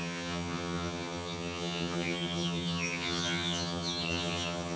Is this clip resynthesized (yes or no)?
yes